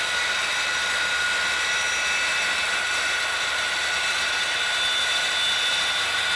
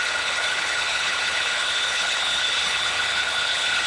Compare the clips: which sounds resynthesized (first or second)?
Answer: second